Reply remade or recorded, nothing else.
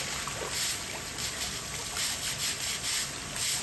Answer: recorded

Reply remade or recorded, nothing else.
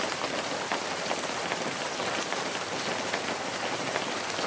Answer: recorded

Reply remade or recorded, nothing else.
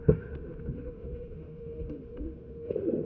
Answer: remade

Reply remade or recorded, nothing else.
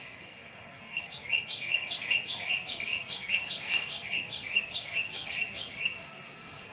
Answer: remade